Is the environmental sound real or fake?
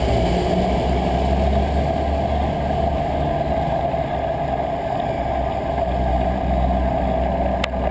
real